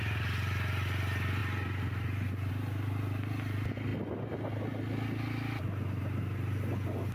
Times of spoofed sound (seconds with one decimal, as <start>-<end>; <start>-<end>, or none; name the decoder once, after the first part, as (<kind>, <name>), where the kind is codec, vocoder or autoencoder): none